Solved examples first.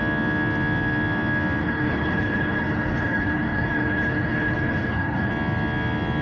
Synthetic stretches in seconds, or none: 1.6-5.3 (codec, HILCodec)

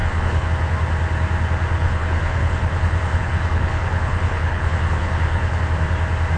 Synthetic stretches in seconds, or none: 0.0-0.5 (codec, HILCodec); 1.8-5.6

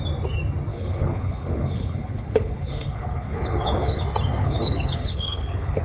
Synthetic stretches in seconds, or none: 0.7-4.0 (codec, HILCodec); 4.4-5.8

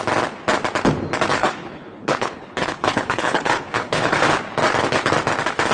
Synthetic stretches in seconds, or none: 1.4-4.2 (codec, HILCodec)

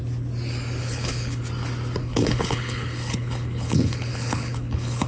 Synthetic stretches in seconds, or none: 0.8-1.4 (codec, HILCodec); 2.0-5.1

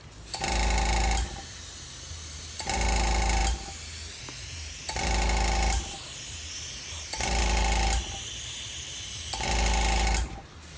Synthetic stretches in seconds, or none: none

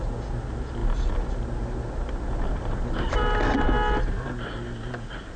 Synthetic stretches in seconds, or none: none